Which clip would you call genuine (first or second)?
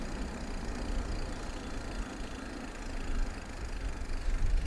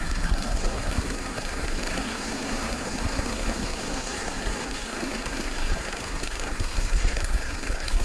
first